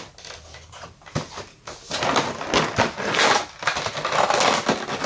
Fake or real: real